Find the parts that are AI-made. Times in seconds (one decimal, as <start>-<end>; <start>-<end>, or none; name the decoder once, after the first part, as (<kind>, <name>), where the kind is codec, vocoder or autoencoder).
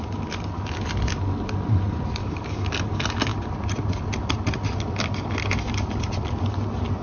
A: 2.2-2.7 (codec, DAC)